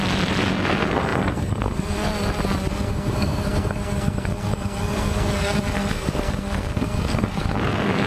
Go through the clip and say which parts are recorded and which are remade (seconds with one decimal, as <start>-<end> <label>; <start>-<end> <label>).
0.0-0.5 recorded; 0.5-2.1 remade; 2.1-2.7 recorded; 2.7-8.1 remade